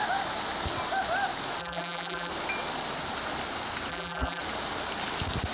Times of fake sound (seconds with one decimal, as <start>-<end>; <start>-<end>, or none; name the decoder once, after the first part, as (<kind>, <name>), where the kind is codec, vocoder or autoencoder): 1.6-2.3 (vocoder, BigVGAN v2); 3.9-4.4